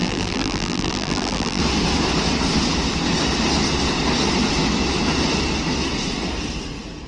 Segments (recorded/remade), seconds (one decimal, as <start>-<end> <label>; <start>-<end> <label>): 0.0-1.6 remade; 1.6-7.1 recorded